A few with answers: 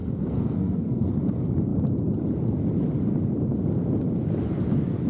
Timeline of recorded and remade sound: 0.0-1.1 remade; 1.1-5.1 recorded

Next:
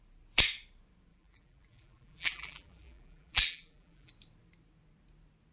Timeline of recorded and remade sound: 0.0-1.1 recorded; 1.1-4.1 remade; 4.1-5.5 recorded

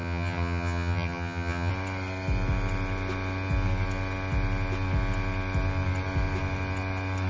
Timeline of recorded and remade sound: 0.0-1.7 remade; 1.7-7.3 recorded

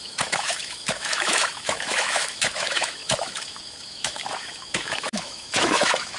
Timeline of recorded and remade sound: 0.0-6.2 remade

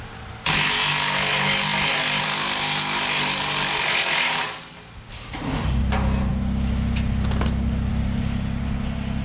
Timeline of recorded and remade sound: 0.0-9.2 recorded

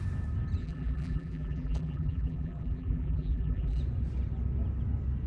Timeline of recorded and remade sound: 0.0-0.6 recorded; 0.6-3.8 remade; 3.8-5.3 recorded

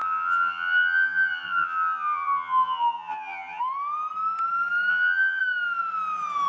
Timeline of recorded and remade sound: 0.0-3.6 remade; 3.6-4.9 recorded; 4.9-5.4 remade; 5.4-6.5 recorded

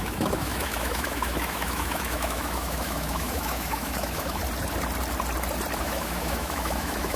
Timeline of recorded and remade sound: 0.0-4.4 remade; 4.4-5.8 recorded; 5.8-7.2 remade